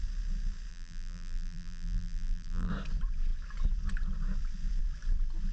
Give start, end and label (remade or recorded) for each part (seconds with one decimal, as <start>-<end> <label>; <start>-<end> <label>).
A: 0.0-0.7 recorded; 0.7-2.7 remade; 2.7-5.5 recorded